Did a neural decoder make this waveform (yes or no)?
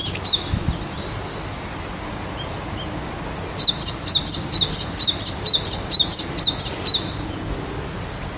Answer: no